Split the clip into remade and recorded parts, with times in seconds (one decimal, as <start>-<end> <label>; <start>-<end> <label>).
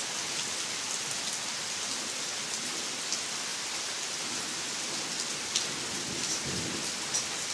0.0-7.5 recorded